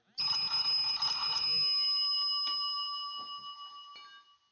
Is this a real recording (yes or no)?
yes